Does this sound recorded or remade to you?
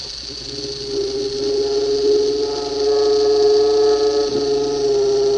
recorded